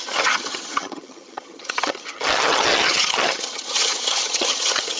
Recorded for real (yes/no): no